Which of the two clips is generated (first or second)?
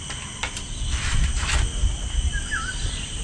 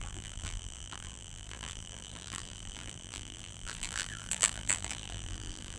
second